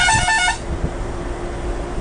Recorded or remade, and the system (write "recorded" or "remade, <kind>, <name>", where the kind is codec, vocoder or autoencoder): recorded